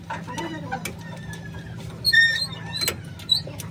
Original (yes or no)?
yes